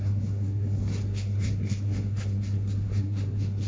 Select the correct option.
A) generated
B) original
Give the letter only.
A